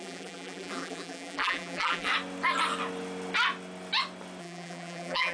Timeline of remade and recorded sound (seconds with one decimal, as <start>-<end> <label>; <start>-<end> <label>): 0.0-2.1 remade; 2.1-4.4 recorded; 4.4-5.3 remade